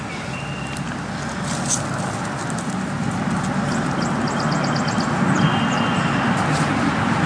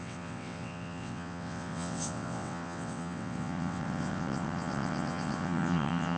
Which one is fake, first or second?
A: second